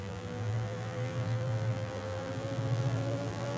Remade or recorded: remade